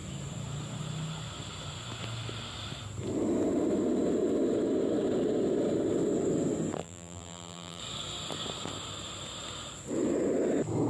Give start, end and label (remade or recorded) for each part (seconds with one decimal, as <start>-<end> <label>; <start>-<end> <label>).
0.0-6.8 recorded; 6.8-7.8 remade; 7.8-10.9 recorded